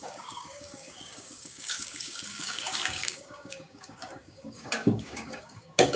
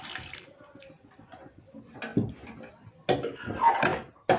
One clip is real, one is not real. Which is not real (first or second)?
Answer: first